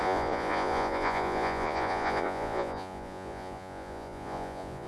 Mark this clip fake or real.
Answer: fake